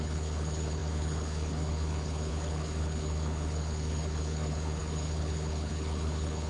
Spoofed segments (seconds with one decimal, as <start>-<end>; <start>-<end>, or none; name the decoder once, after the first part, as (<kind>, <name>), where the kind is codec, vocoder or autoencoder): 0.0-6.5 (codec, HILCodec)